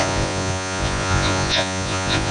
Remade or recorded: remade